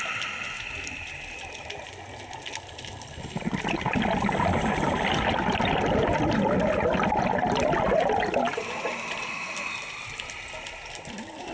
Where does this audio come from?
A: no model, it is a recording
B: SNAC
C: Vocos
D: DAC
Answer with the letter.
A